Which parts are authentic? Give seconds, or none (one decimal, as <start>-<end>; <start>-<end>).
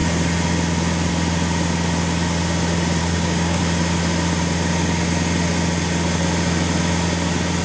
0.0-3.0; 3.6-7.6